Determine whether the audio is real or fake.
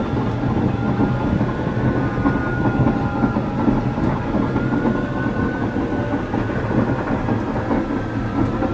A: real